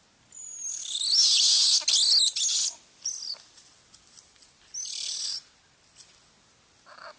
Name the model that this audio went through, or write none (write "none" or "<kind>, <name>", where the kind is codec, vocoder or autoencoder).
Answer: none